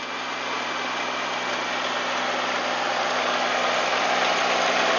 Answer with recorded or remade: recorded